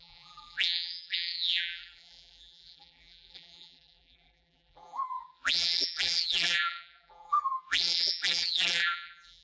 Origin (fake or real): fake